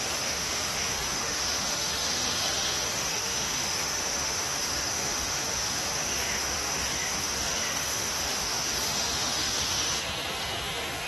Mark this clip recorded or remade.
remade